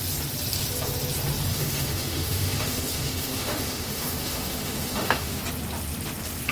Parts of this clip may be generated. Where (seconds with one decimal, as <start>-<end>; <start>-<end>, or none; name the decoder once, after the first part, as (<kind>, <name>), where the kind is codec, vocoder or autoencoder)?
1.5-5.4 (autoencoder, DAC-VAE)